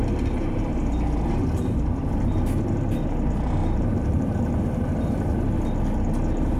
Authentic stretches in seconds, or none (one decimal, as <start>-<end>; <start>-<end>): 1.9-3.6; 5.3-6.6